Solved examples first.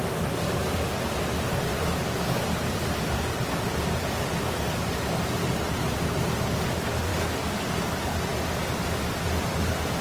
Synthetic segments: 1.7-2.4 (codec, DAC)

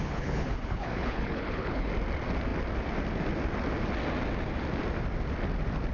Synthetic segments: 0.0-1.9 (codec, HILCodec)

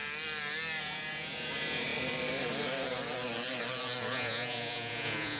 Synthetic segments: 0.8-1.9 (vocoder, Vocos); 4.1-5.4

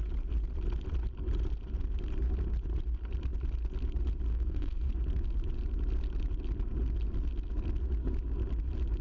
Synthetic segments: 4.3-4.9 (codec, SNAC)

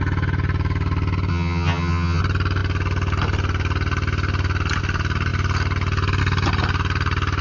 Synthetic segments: 1.3-2.2 (vocoder, HiFi-GAN)